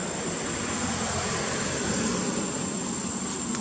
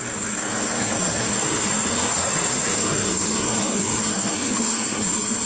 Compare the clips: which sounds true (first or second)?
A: first